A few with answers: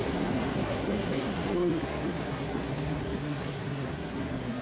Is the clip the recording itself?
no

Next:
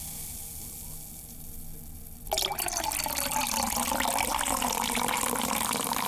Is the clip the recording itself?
yes